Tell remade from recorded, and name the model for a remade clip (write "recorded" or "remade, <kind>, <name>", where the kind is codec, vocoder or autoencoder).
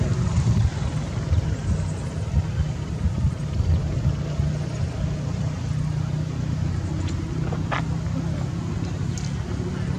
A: recorded